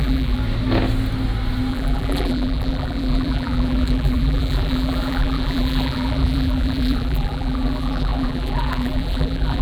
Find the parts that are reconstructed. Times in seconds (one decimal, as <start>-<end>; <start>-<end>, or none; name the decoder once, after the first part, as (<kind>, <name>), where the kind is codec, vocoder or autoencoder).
0.0-0.4 (vocoder, BigVGAN v2); 1.7-9.6